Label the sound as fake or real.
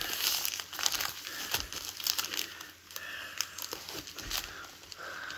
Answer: real